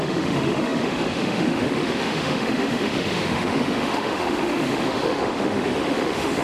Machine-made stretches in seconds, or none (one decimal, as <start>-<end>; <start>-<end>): 0.0-6.4